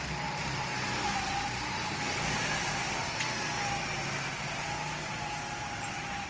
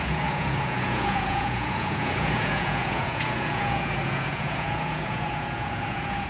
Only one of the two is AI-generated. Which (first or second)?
second